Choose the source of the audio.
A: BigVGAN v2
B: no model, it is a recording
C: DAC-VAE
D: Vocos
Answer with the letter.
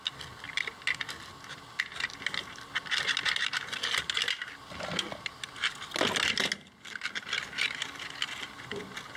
B